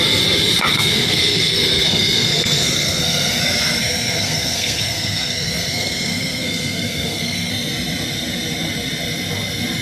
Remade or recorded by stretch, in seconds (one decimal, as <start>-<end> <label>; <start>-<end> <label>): 0.0-0.7 recorded; 0.7-3.4 remade; 3.4-3.8 recorded; 3.8-7.5 remade; 7.5-9.8 recorded